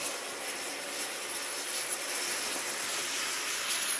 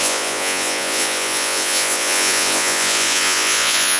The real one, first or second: first